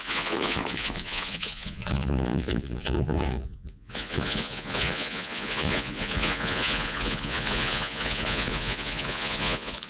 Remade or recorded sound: remade